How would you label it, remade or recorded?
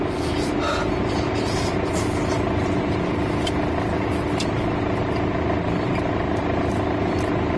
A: recorded